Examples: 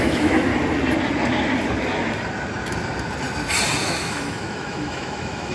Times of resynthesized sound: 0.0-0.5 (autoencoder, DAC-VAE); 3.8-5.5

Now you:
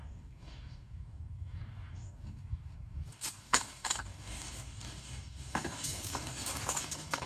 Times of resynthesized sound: 0.0-7.3 (codec, DAC)

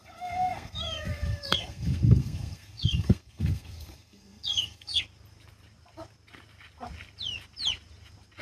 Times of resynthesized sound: 0.0-5.0 (codec, SNAC)

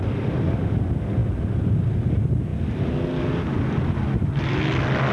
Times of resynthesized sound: none

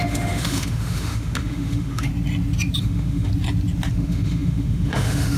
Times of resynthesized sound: 0.0-2.1 (autoencoder, DAC-VAE); 2.8-3.3; 3.9-5.4

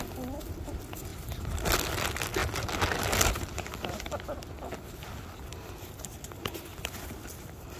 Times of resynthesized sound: none

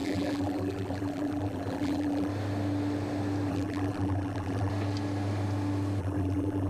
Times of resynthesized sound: 0.0-2.3 (vocoder, BigVGAN v2); 3.5-4.7; 6.0-6.7

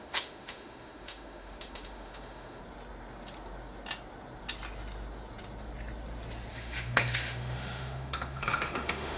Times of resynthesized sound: 0.0-2.6 (autoencoder, DAC-VAE); 6.5-9.2